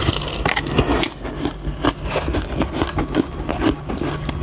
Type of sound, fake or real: real